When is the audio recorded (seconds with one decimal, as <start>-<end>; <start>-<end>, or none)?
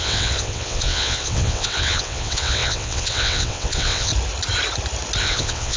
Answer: 4.1-5.2